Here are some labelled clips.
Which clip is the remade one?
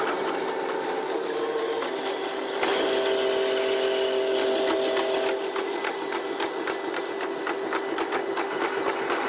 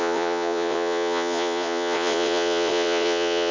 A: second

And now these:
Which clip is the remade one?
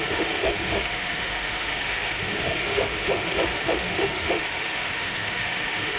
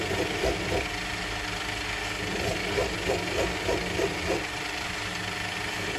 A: first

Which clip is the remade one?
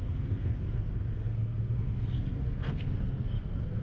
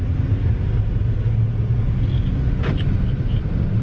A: first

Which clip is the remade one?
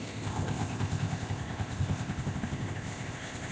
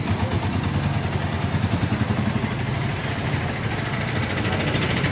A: first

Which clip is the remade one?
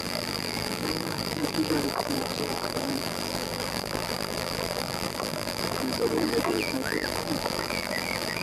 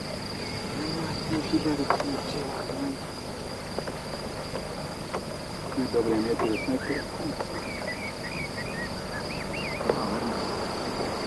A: first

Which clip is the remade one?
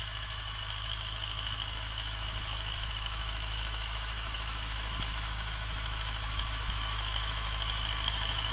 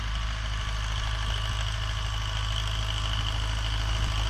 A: first